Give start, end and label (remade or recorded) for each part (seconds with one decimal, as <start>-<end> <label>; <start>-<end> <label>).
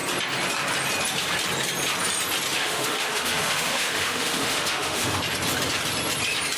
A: 0.0-2.5 recorded; 2.5-5.2 remade; 5.2-6.6 recorded